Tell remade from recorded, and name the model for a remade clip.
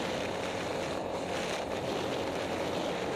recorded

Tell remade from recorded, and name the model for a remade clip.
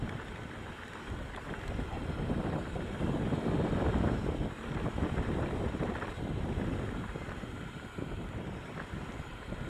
remade, vocoder, BigVGAN v2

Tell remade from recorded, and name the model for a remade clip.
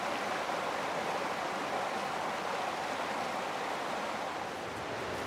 recorded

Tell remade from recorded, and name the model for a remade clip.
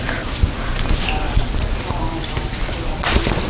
remade, vocoder, BigVGAN v2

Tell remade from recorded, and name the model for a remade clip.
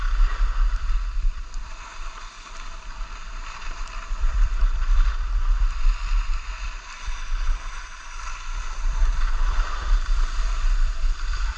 remade, vocoder, BigVGAN v2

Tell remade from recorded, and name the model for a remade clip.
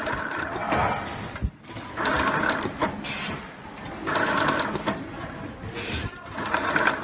recorded